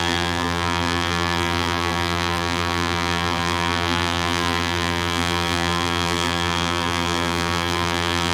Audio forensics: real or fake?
fake